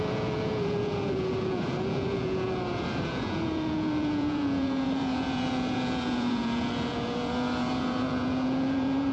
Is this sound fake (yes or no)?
yes